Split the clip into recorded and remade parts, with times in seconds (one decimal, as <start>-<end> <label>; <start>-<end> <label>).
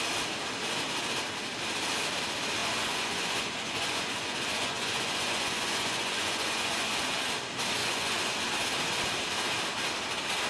0.0-2.6 recorded; 2.6-7.2 remade; 7.2-7.8 recorded; 7.8-8.3 remade; 8.3-10.5 recorded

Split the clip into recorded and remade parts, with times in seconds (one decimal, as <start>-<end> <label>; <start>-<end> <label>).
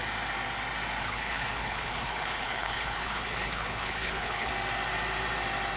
0.0-1.0 recorded; 1.0-4.5 remade; 4.5-5.8 recorded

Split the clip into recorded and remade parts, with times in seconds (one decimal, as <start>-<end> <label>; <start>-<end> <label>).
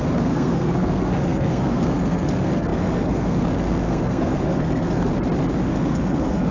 0.0-5.1 remade; 5.1-5.7 recorded; 5.7-6.5 remade